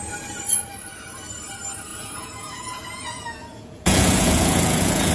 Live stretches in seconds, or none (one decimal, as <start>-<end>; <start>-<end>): 0.0-1.9

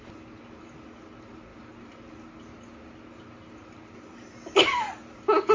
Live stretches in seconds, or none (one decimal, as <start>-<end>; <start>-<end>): 0.0-5.5

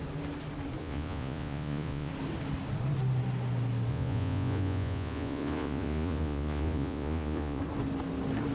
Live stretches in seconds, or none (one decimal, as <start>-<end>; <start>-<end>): 0.0-0.8; 2.1-3.9; 7.6-8.5